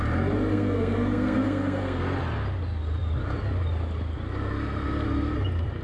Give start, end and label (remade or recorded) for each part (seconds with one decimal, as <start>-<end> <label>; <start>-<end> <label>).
0.0-0.5 recorded; 0.5-2.0 remade; 2.0-5.8 recorded